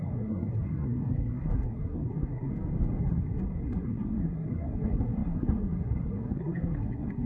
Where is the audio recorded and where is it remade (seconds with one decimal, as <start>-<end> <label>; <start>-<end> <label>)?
0.0-2.5 remade; 2.5-3.0 recorded; 3.0-7.3 remade